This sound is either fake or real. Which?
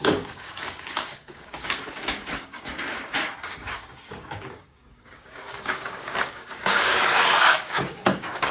fake